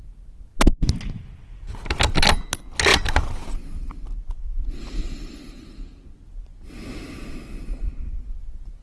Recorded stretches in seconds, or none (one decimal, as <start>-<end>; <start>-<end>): 0.0-8.8